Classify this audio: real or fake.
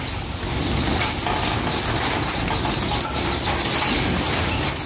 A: real